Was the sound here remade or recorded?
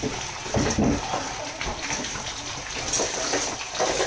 recorded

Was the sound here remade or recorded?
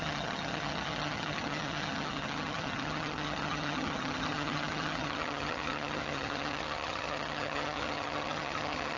remade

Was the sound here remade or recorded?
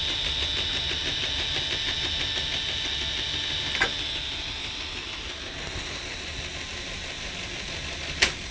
recorded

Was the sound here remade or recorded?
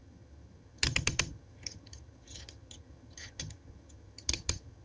remade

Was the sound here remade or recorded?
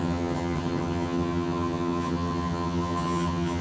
remade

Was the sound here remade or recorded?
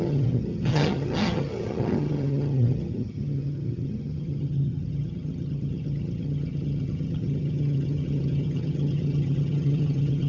remade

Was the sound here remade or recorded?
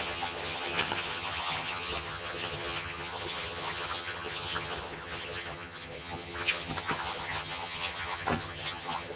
remade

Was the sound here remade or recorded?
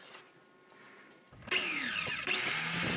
recorded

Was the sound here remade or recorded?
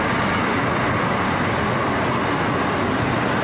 recorded